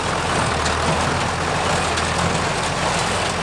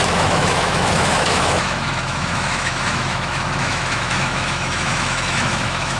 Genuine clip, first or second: first